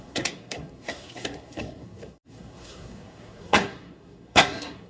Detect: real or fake fake